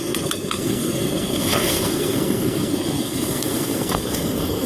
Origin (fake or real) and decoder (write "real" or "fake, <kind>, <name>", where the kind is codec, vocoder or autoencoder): fake, codec, SNAC